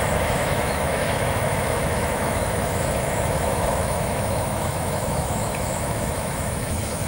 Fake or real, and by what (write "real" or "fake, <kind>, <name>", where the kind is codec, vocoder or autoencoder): fake, autoencoder, DAC-VAE